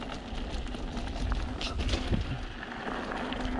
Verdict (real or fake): real